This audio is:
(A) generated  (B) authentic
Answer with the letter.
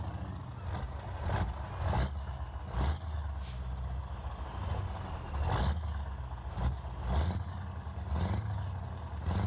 B